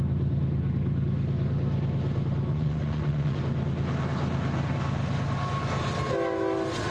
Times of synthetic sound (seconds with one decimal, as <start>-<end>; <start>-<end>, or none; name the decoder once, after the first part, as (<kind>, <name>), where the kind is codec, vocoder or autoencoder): 2.5-3.4 (vocoder, Vocos)